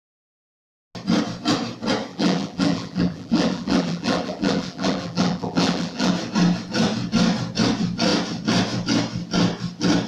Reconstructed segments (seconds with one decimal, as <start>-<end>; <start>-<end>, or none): 2.1-6.1